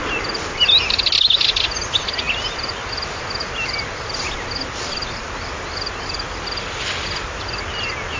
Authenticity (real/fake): real